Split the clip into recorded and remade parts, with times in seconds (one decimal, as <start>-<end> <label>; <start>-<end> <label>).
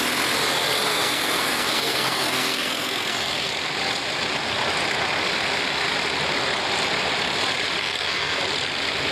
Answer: 0.0-0.9 recorded; 0.9-3.5 remade; 3.5-7.8 recorded; 7.8-8.4 remade; 8.4-9.1 recorded